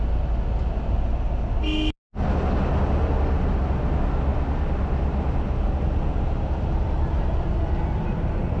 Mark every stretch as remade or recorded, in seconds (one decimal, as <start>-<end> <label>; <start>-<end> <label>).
0.0-8.6 recorded

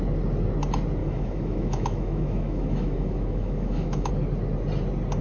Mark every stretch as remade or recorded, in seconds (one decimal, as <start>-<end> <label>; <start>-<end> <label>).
0.0-1.0 recorded; 1.0-4.1 remade; 4.1-5.2 recorded

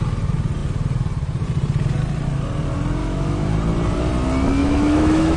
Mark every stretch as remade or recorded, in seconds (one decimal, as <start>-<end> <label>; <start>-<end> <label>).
0.0-3.0 recorded; 3.0-3.5 remade; 3.5-4.6 recorded; 4.6-5.4 remade

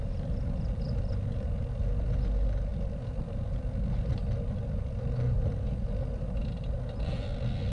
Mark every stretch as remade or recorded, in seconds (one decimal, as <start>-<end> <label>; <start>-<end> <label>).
0.0-7.7 recorded